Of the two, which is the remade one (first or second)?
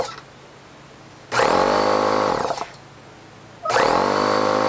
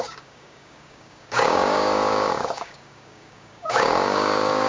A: second